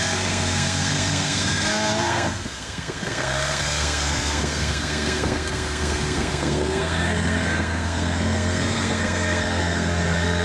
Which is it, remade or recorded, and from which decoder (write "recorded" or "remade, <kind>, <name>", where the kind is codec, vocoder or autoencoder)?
remade, codec, SNAC